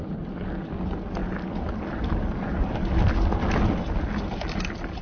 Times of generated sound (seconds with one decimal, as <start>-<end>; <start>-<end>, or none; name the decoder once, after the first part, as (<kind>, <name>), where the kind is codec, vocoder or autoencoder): 0.0-0.5 (vocoder, BigVGAN v2)